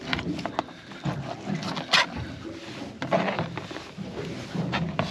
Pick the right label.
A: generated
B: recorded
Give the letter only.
B